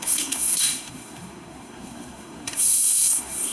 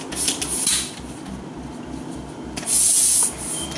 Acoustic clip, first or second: second